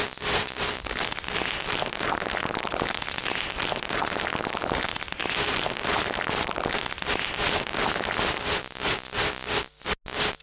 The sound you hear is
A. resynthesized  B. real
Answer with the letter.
B